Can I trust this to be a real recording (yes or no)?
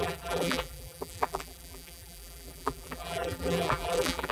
no